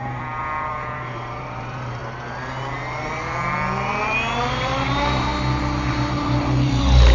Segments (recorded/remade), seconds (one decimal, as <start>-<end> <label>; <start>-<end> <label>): 0.0-2.0 remade; 2.0-4.5 recorded; 4.5-5.3 remade; 5.3-5.9 recorded; 5.9-7.1 remade